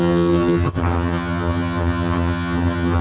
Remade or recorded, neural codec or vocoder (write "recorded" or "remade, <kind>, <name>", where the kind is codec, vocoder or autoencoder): remade, vocoder, HiFi-GAN